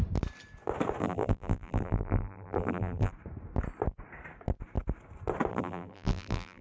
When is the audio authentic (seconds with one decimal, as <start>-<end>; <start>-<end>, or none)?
0.0-1.0; 3.1-5.5